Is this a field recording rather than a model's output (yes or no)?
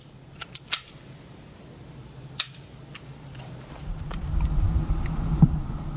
yes